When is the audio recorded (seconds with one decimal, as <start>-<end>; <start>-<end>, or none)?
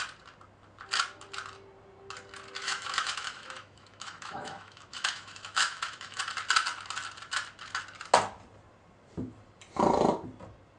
0.0-2.6; 6.2-10.8